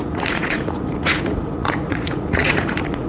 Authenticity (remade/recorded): remade